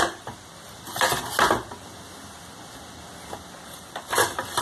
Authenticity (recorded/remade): recorded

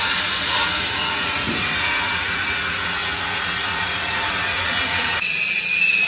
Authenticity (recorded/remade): remade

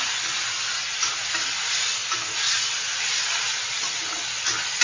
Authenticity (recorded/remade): recorded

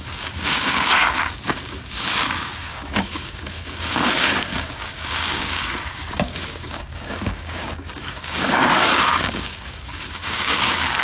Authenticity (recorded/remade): remade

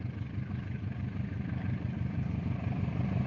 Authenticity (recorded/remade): recorded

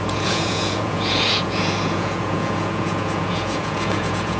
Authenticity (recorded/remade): remade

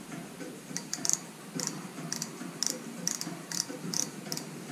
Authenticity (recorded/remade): remade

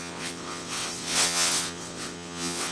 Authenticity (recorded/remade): remade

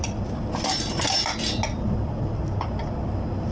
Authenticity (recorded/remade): recorded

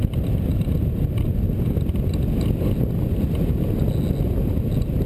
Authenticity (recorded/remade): recorded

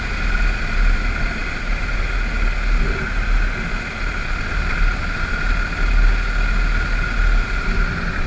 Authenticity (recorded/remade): recorded